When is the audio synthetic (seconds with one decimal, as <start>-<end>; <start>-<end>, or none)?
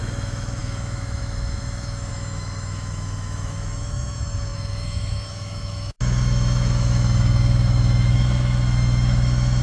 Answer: 0.0-9.6